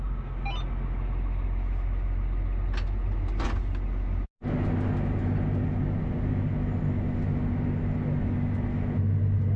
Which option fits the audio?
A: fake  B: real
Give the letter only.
B